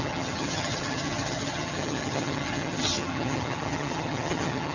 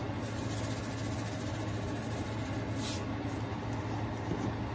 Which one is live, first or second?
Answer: second